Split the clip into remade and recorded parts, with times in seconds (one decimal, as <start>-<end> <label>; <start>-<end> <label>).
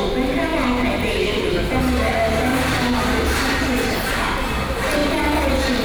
0.0-2.5 recorded; 2.5-4.1 remade; 4.1-5.8 recorded